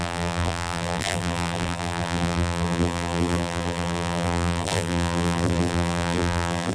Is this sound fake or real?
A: fake